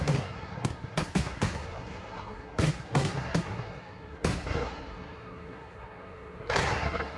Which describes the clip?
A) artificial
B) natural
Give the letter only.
A